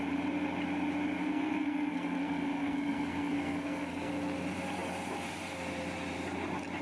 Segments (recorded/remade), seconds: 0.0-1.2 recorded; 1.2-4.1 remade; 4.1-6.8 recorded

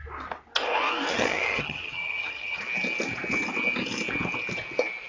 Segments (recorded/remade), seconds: 0.0-1.1 recorded; 1.1-2.6 remade; 2.6-5.1 recorded

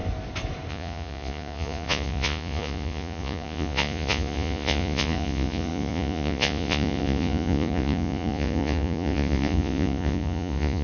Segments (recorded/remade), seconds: 0.0-0.7 recorded; 0.7-10.8 remade

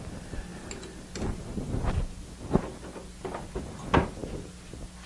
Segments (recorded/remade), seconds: 0.0-5.1 recorded

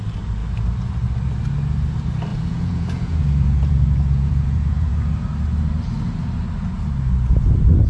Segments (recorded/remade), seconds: 0.0-2.3 recorded; 2.3-5.1 remade; 5.1-7.9 recorded

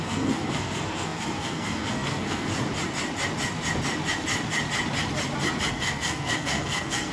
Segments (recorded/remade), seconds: 0.0-2.5 remade; 2.5-5.7 recorded; 5.7-7.1 remade

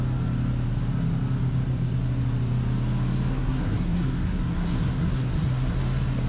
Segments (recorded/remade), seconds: 0.0-3.3 recorded; 3.3-5.8 remade; 5.8-6.3 recorded